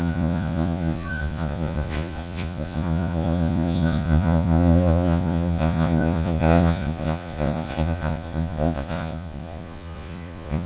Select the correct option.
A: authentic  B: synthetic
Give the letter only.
B